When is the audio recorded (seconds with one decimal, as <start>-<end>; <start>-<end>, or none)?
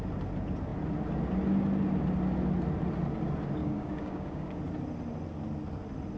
0.0-3.6; 4.6-6.2